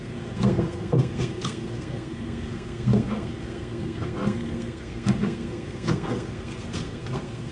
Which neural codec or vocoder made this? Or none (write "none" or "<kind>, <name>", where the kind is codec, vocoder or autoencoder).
codec, SNAC